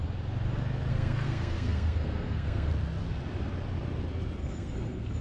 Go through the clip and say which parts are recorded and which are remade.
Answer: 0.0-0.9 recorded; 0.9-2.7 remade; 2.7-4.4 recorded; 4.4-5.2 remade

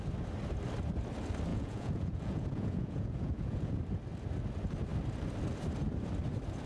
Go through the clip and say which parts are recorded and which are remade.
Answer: 0.0-1.5 recorded; 1.5-3.7 remade; 3.7-6.7 recorded

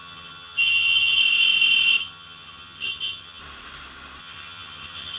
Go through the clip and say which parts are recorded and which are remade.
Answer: 0.0-1.2 remade; 1.2-2.0 recorded; 2.0-3.4 remade; 3.4-4.2 recorded; 4.2-5.2 remade

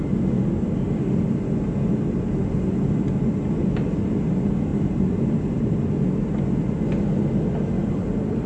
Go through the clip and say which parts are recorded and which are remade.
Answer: 0.0-4.7 recorded; 4.7-5.8 remade; 5.8-8.5 recorded

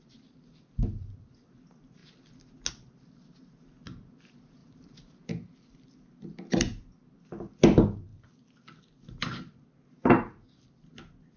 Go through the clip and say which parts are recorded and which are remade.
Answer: 0.0-4.6 recorded; 4.6-7.2 remade; 7.2-11.4 recorded

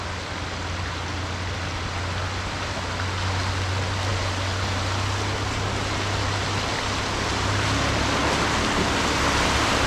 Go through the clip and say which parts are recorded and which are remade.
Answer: 0.0-9.9 recorded

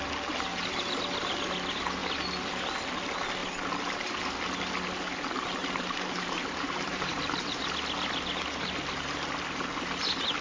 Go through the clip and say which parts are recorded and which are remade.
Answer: 0.0-0.5 recorded; 0.5-1.0 remade; 1.0-5.6 recorded; 5.6-7.6 remade; 7.6-10.4 recorded